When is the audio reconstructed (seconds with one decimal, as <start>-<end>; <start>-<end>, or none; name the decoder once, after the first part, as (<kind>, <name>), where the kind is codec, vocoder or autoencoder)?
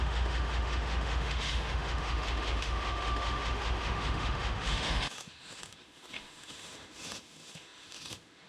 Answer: 0.0-8.5 (autoencoder, DAC-VAE)